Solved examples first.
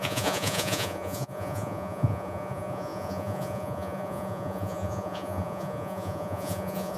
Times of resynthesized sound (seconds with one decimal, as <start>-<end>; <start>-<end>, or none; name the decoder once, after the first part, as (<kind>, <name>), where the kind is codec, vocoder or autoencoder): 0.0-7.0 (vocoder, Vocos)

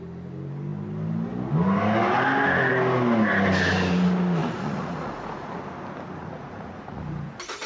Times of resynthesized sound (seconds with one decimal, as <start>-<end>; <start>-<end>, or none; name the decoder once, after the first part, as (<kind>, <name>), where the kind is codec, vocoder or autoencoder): 4.4-5.5 (vocoder, Vocos); 6.2-7.0

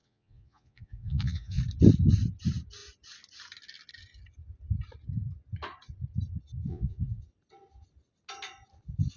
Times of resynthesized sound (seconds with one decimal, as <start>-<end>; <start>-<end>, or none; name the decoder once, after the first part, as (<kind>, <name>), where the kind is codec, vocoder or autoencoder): 0.0-1.6 (vocoder, Vocos); 6.7-7.2

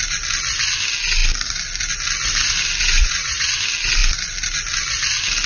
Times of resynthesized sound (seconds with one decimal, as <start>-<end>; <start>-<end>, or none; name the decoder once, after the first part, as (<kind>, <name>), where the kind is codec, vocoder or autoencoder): 3.0-3.5 (vocoder, Vocos)

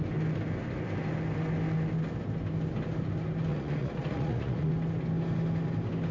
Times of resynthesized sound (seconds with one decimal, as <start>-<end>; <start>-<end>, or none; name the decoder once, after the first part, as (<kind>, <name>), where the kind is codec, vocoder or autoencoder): 3.5-4.7 (vocoder, Vocos)

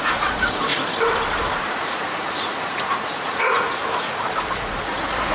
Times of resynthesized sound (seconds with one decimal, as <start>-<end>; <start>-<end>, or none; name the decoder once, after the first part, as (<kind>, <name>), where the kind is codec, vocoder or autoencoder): 0.0-0.7 (vocoder, Vocos); 1.7-3.8; 4.5-5.3

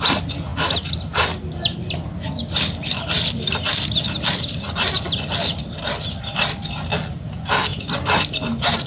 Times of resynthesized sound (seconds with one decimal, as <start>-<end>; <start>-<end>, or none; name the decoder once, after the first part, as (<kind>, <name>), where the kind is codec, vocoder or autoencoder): none

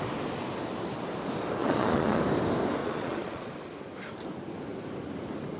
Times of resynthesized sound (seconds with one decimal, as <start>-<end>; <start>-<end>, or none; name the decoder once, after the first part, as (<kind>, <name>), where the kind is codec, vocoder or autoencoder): 1.6-2.2 (vocoder, Vocos); 2.8-3.5